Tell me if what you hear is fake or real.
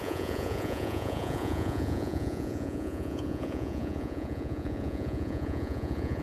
fake